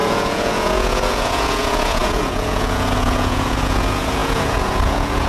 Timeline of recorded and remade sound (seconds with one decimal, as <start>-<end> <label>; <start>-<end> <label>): 0.0-5.3 remade